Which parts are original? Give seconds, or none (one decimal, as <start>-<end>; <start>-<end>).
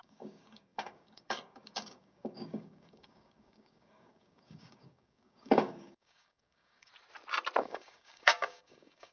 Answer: 6.9-7.6